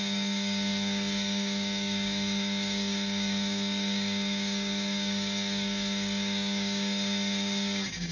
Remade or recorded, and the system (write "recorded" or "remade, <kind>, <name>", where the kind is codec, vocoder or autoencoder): remade, codec, DAC